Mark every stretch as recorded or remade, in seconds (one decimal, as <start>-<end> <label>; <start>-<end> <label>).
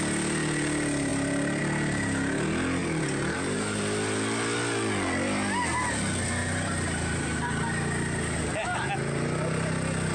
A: 0.0-2.8 recorded; 2.8-3.8 remade; 3.8-6.4 recorded; 6.4-8.9 remade; 8.9-10.1 recorded